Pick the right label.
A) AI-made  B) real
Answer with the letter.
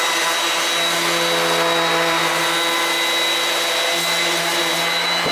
B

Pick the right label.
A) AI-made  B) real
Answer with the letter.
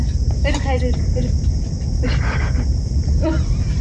B